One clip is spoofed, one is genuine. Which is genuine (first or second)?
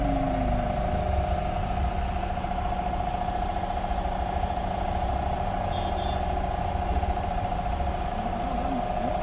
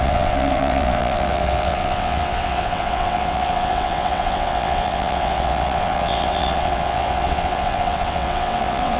first